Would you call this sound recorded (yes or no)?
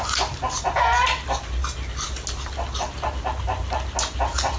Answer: yes